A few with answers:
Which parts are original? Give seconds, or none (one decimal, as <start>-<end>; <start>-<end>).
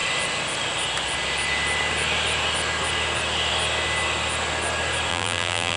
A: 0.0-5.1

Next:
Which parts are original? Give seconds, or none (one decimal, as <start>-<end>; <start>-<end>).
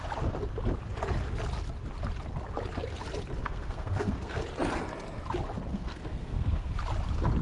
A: 0.0-3.4; 4.4-5.7; 6.7-7.4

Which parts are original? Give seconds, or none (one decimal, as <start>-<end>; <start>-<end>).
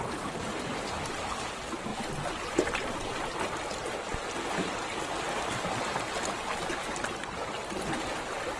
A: 0.0-8.6